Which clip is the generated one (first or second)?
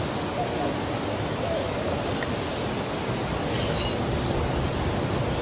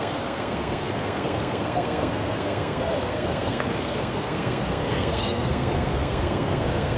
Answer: second